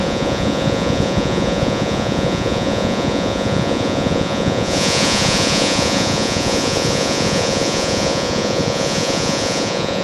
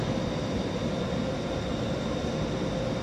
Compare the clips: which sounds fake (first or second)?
first